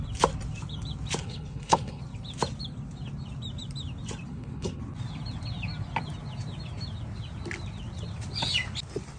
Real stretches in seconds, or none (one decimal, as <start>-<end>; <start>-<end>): 0.0-1.2; 2.0-4.3; 4.8-9.2